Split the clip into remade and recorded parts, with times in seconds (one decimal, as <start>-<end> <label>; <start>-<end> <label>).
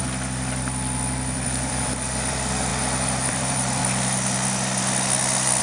0.0-2.7 remade; 2.7-3.3 recorded; 3.3-3.8 remade; 3.8-5.6 recorded